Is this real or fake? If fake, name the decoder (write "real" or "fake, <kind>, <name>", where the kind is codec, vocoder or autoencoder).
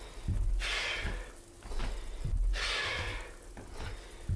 real